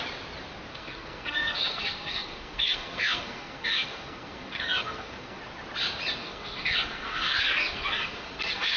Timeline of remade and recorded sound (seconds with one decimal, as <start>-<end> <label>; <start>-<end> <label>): 0.0-0.7 recorded; 0.7-5.4 remade; 5.4-6.2 recorded; 6.2-8.8 remade